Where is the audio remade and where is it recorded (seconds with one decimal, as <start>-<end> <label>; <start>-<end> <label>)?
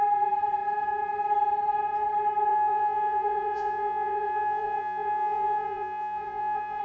0.0-2.5 recorded; 2.5-6.8 remade